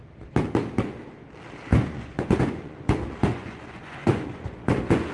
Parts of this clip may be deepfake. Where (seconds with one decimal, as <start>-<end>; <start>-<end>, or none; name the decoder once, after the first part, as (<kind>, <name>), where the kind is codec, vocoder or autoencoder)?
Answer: 1.7-5.1 (vocoder, Vocos)